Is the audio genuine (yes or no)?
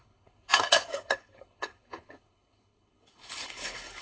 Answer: no